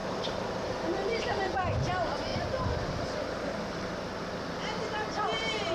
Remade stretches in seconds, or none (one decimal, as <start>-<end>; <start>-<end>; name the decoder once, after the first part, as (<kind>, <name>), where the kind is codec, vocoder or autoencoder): none